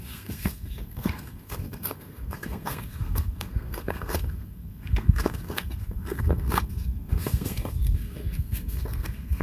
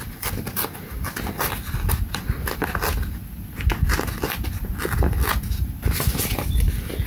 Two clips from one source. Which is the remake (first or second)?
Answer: first